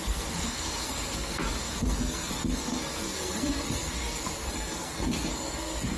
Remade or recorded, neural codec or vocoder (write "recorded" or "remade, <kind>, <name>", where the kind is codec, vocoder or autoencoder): remade, codec, SNAC